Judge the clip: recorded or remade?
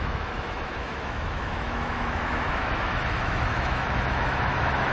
remade